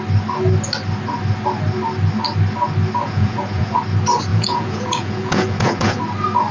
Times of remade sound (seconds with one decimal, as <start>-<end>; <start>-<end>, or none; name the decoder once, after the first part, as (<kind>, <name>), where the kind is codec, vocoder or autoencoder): 3.0-3.8 (vocoder, Vocos); 4.3-6.0